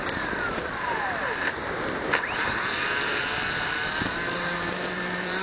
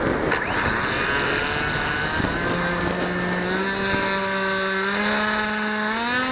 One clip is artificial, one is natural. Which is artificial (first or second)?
first